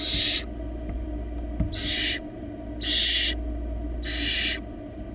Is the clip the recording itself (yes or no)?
yes